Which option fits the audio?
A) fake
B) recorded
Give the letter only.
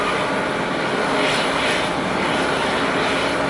B